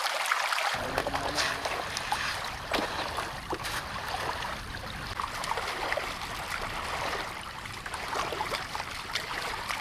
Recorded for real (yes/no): yes